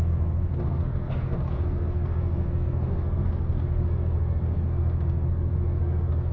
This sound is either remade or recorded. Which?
remade